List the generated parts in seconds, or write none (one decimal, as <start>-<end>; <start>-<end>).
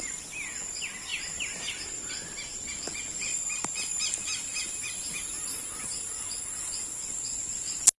3.3-4.0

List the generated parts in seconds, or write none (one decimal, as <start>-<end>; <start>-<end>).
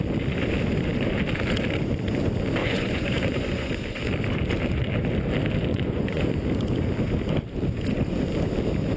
2.6-3.7; 5.7-6.2